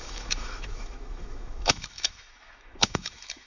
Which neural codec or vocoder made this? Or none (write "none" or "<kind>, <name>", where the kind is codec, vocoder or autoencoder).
autoencoder, DAC-VAE